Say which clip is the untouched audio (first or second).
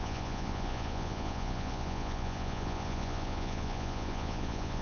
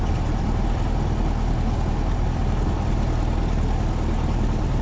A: second